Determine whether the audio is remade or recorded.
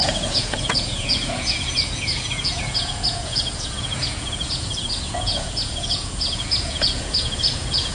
remade